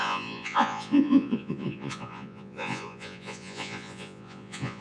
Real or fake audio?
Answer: fake